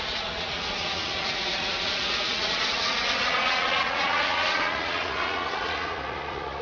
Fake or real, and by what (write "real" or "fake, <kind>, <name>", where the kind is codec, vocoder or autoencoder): fake, vocoder, Vocos